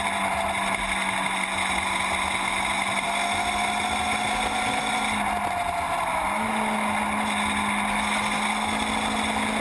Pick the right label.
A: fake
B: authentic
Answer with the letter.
B